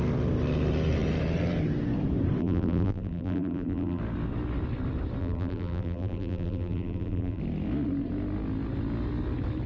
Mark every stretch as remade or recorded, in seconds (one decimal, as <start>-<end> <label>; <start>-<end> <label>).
0.0-2.4 recorded; 2.4-4.0 remade; 4.0-5.2 recorded; 5.2-7.4 remade; 7.4-9.7 recorded